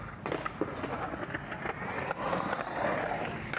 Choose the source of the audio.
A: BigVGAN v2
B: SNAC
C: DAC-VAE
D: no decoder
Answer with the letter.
D